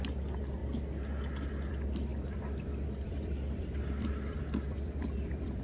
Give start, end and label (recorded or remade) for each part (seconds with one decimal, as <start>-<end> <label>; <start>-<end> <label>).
0.0-2.1 recorded; 2.1-5.6 remade